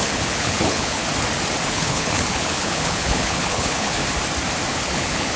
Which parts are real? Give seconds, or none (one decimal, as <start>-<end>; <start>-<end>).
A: 1.0-1.7; 4.0-4.7